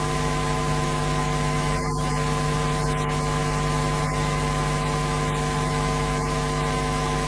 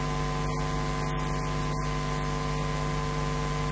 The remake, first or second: first